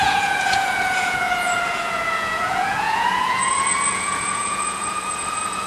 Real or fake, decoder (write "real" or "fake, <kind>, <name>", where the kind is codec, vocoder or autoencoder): fake, vocoder, Vocos